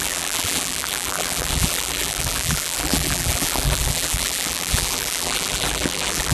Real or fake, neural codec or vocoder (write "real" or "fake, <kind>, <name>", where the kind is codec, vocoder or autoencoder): fake, vocoder, BigVGAN v2